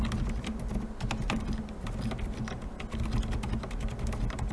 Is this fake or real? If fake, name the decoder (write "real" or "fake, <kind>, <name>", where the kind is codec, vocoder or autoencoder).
real